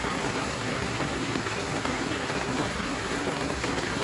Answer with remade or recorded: remade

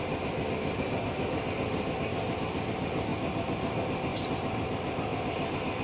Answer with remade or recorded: recorded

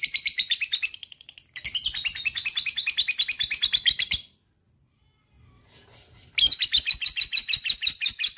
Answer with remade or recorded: remade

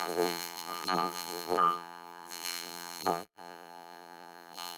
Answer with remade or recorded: remade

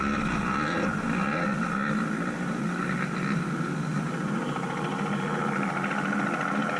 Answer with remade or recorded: recorded